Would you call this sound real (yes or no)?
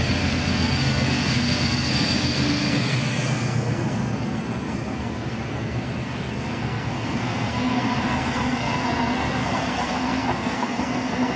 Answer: no